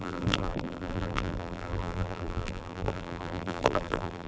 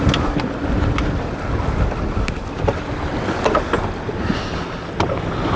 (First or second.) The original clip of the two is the second